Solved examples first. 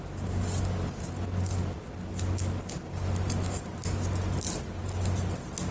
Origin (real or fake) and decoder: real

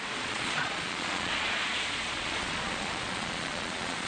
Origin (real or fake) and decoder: fake, vocoder, Vocos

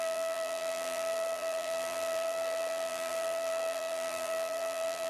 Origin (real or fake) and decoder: fake, vocoder, BigVGAN v2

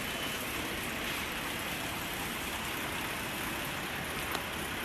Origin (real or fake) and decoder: real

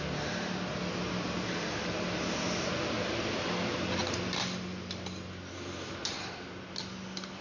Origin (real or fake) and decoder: real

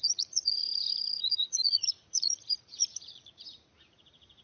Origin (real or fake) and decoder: fake, vocoder, Vocos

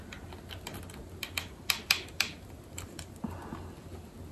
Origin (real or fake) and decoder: real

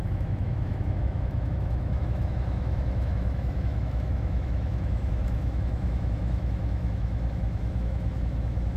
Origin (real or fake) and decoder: fake, autoencoder, DAC-VAE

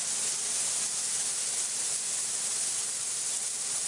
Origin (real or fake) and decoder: real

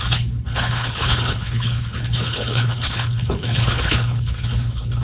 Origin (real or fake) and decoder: fake, codec, HILCodec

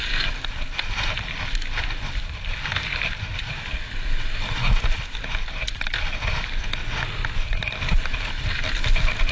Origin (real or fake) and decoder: real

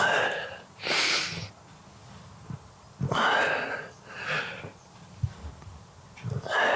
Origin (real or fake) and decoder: real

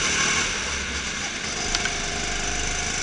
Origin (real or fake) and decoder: real